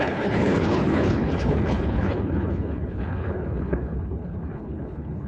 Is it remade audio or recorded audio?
remade